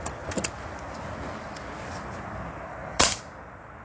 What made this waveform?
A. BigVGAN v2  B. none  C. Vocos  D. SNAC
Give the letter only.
B